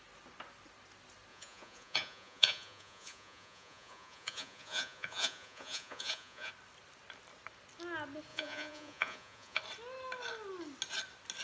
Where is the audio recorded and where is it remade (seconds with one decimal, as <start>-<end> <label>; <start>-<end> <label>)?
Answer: 0.0-1.3 recorded; 1.3-6.5 remade; 6.5-8.3 recorded; 8.3-9.6 remade; 9.6-11.4 recorded